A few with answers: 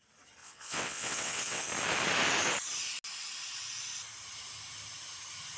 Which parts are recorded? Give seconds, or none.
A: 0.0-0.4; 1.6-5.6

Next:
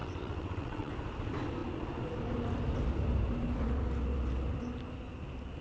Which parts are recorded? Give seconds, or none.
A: 0.9-5.6

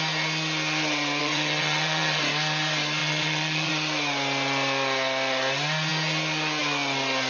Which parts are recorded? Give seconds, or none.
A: 0.0-1.2; 2.2-3.0; 3.7-7.3